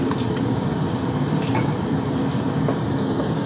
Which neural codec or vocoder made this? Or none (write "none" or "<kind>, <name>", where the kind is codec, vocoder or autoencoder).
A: vocoder, BigVGAN v2